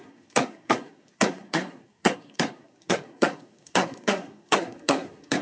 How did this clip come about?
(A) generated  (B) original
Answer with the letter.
A